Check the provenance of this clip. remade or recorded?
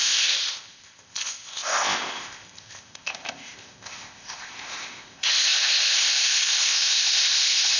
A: remade